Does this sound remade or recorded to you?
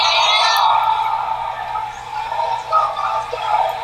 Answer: recorded